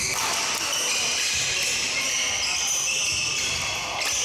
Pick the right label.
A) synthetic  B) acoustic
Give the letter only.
B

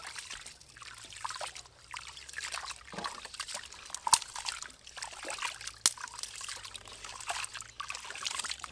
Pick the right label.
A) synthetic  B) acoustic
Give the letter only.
B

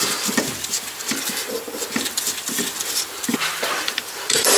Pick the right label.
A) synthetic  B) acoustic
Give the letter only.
A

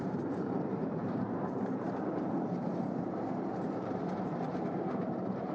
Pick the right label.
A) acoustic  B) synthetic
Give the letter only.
B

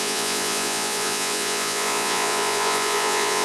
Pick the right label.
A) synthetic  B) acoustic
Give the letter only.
A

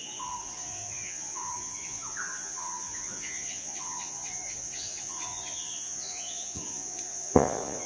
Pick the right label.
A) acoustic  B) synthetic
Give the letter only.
B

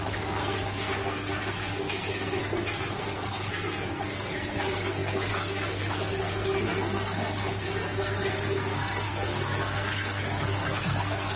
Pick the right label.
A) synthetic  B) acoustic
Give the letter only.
A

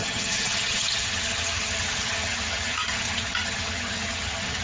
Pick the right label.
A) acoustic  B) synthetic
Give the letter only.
B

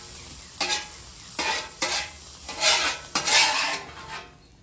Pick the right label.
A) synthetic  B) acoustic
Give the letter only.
B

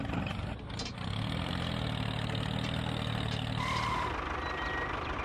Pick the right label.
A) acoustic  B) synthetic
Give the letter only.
A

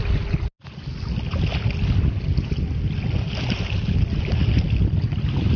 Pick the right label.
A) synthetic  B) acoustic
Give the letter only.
B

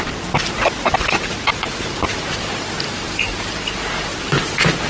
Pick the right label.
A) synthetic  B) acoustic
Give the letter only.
B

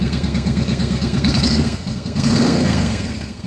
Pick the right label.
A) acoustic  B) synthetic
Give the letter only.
B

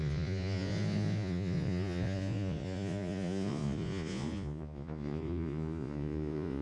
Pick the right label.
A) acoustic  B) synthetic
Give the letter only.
B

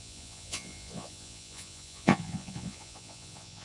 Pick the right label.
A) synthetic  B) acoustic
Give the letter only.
A